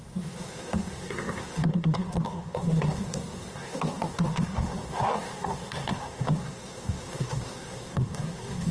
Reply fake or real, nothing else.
fake